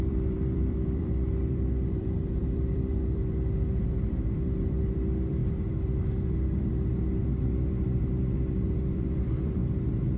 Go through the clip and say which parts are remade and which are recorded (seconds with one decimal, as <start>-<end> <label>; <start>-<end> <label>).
0.0-9.6 remade; 9.6-10.2 recorded